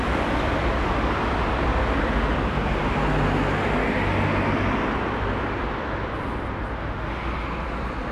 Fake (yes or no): no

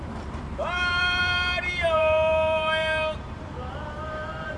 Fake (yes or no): yes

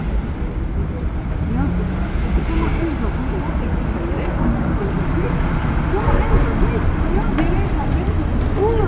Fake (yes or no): no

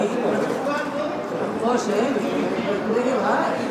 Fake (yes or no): yes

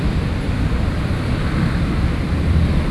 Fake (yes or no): yes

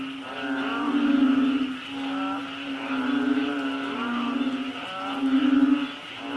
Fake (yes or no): no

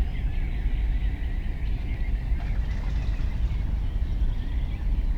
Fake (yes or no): no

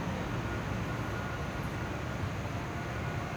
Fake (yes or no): no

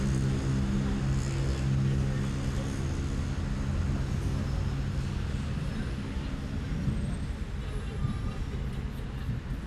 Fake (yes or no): no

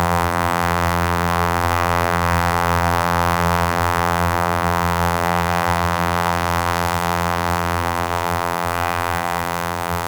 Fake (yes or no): yes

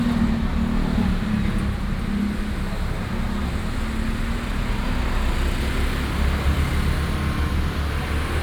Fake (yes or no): no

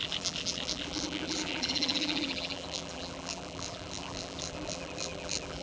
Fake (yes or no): yes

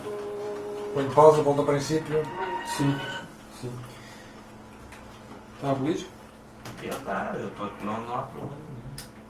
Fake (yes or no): no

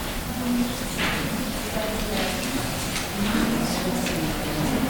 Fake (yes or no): no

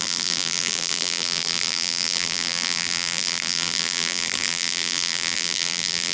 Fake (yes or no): yes